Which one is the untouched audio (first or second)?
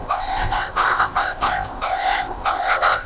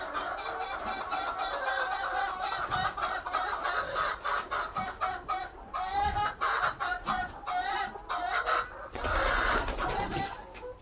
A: second